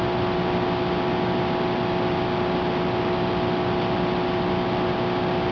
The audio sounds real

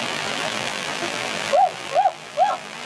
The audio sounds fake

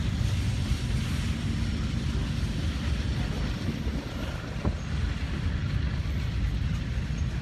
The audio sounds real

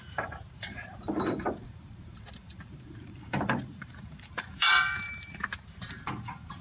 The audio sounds fake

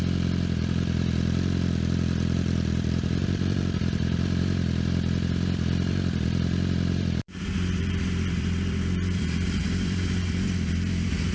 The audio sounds fake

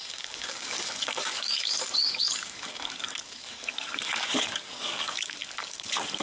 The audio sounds fake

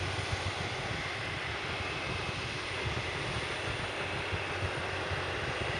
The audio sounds real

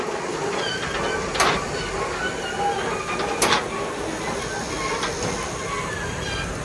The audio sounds real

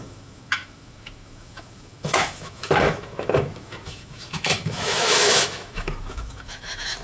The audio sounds fake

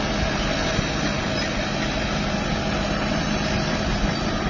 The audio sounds real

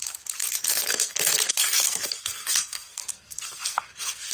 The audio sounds fake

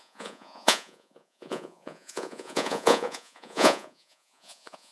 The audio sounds fake